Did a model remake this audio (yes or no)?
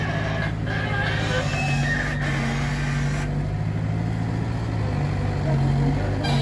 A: no